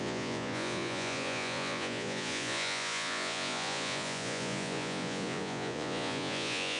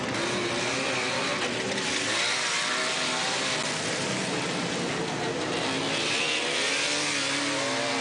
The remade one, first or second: first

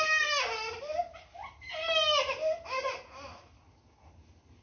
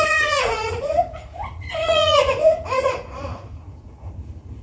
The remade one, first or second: second